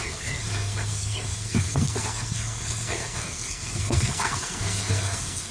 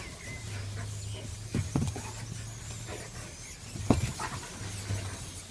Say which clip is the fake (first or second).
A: first